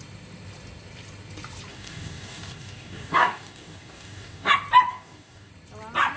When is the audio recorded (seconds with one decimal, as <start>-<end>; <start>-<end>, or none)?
0.0-1.7; 4.5-4.9; 5.5-6.2